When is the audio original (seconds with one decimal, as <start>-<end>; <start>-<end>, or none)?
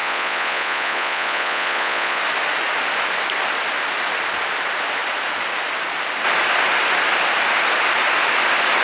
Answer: 2.2-8.8